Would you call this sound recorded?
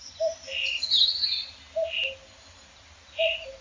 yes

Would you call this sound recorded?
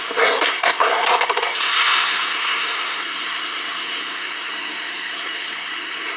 no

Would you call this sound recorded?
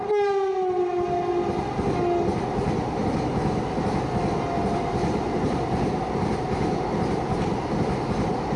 yes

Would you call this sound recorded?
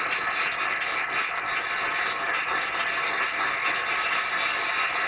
yes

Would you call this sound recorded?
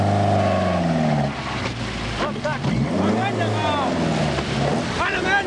yes